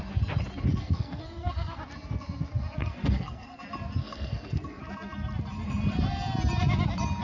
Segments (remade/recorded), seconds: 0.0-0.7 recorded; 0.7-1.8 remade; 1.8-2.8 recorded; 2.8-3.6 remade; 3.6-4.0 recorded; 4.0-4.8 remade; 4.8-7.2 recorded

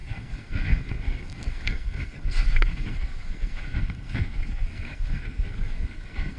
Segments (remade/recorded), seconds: 0.0-6.4 remade

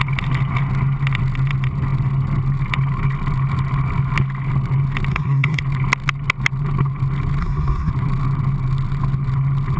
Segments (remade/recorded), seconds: 0.0-5.1 recorded; 5.1-5.6 remade; 5.6-7.4 recorded; 7.4-7.9 remade; 7.9-9.8 recorded

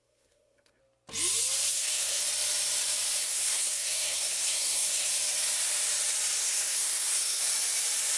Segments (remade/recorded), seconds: 0.0-0.8 remade; 0.8-1.7 recorded; 1.7-2.2 remade; 2.2-3.2 recorded; 3.2-5.1 remade; 5.1-6.4 recorded; 6.4-7.4 remade; 7.4-8.2 recorded